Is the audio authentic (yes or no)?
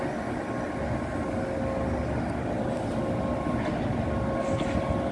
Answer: yes